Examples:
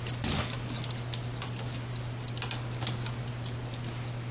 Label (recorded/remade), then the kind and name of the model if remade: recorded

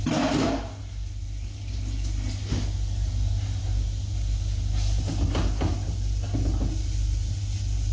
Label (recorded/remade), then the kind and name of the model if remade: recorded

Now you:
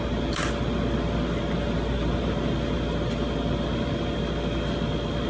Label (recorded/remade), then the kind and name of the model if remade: recorded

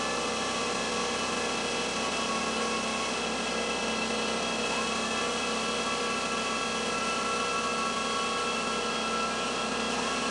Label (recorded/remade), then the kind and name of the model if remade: recorded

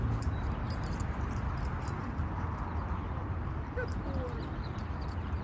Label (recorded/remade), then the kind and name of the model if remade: recorded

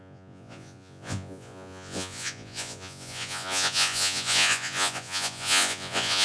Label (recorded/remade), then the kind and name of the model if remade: remade, vocoder, Vocos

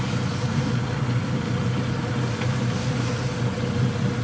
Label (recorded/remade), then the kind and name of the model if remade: recorded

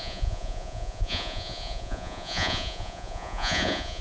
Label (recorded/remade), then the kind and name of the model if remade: remade, vocoder, Vocos